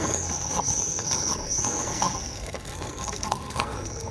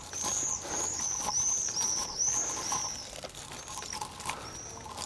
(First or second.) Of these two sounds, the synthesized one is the first